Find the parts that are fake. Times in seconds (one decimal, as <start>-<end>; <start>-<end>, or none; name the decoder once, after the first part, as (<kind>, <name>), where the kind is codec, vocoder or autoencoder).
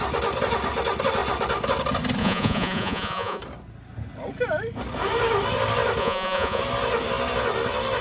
2.2-3.4 (vocoder, Vocos); 6.0-6.6